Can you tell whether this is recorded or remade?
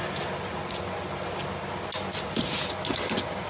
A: recorded